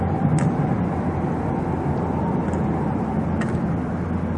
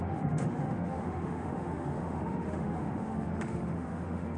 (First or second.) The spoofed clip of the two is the second